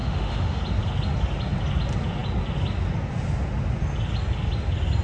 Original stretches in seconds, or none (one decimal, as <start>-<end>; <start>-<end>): 0.6-5.0